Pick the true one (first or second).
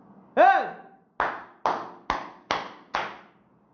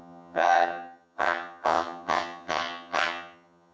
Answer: first